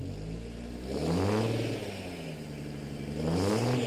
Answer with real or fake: real